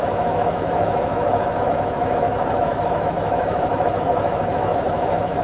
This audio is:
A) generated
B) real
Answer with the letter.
A